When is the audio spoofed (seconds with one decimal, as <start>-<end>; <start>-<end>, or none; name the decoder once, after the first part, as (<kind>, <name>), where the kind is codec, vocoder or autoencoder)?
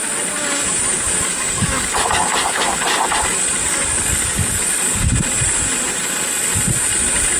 0.9-2.6 (codec, DAC); 3.6-5.1